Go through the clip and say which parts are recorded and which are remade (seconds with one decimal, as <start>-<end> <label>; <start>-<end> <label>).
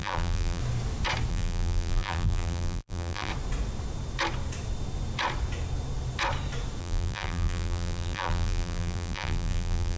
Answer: 0.0-0.6 remade; 0.6-1.3 recorded; 1.3-3.3 remade; 3.3-6.8 recorded; 6.8-10.0 remade